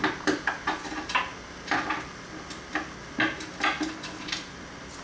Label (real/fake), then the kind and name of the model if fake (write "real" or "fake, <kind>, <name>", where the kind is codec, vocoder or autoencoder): real